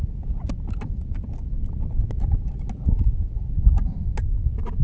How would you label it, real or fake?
real